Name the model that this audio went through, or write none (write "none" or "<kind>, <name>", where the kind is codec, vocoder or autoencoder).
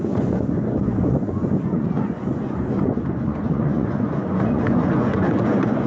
vocoder, Vocos